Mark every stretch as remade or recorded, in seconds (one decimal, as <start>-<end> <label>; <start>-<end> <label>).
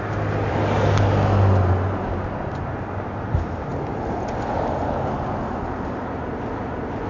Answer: 0.0-7.1 recorded